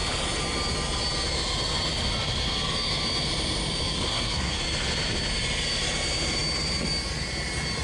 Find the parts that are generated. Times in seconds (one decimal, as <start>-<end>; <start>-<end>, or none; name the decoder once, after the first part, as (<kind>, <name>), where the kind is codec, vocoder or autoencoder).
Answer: 4.1-4.6 (codec, SNAC)